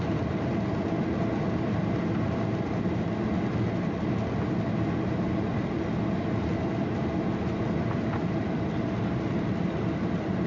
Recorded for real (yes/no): yes